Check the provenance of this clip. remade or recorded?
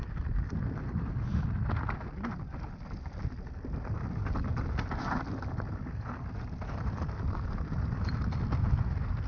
recorded